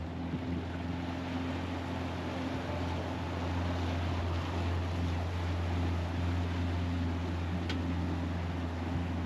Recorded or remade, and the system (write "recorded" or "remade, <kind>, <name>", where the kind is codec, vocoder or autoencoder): recorded